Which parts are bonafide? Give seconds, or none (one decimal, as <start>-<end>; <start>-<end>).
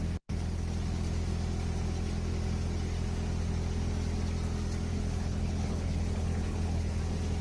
0.0-4.9; 7.0-7.4